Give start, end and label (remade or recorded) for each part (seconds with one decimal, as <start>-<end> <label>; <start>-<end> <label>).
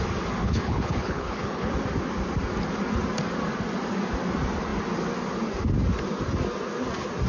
0.0-0.4 recorded; 0.4-1.7 remade; 1.7-7.3 recorded